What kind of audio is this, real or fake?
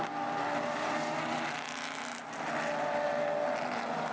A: real